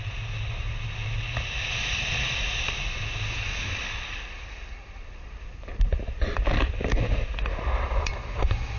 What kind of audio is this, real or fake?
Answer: real